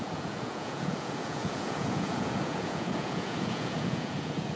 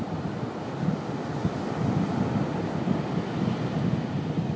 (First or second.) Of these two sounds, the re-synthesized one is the first